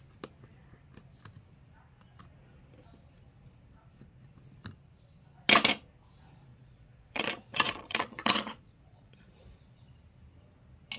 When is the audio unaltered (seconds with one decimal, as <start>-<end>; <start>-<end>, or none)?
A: 0.0-6.5; 9.3-11.0